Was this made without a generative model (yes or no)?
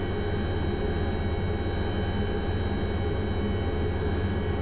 yes